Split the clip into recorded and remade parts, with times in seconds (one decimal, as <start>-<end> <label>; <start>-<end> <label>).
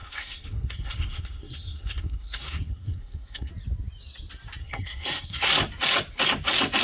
0.0-3.5 remade; 3.5-4.6 recorded; 4.6-5.5 remade; 5.5-6.8 recorded